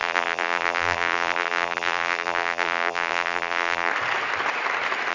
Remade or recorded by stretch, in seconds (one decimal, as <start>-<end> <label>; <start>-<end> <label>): 0.0-3.9 remade; 3.9-5.1 recorded